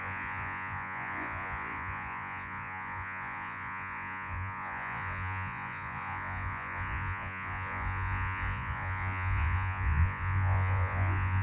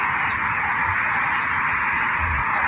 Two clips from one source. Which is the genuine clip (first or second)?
second